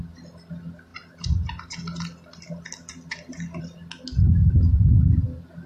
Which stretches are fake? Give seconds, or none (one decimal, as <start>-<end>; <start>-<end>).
none